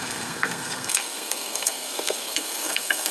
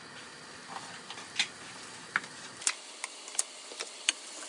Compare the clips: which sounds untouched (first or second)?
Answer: second